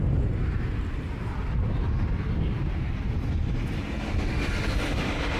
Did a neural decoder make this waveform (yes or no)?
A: no